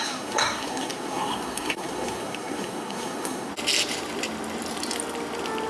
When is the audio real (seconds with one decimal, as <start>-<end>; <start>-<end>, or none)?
3.5-5.7